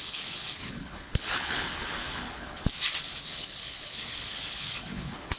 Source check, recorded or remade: remade